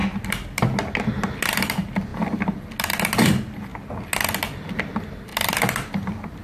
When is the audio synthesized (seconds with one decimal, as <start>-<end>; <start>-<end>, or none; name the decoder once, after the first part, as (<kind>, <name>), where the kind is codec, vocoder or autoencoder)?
1.2-2.1 (vocoder, BigVGAN v2); 2.9-3.7; 4.8-5.3; 5.9-6.4